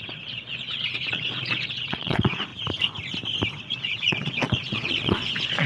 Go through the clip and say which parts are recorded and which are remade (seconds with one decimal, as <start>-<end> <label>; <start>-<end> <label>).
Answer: 0.0-2.5 remade; 2.5-3.6 recorded; 3.6-5.7 remade